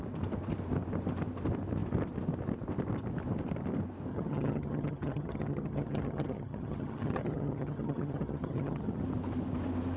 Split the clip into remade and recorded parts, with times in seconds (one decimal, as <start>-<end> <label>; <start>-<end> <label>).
0.0-4.1 recorded; 4.1-9.0 remade; 9.0-10.0 recorded